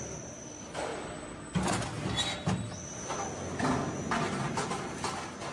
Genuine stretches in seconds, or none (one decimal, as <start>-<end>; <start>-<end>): 0.0-5.5